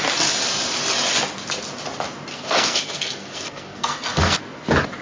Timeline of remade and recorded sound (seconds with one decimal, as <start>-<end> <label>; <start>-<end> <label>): 0.0-2.3 recorded; 2.3-4.4 remade; 4.4-5.0 recorded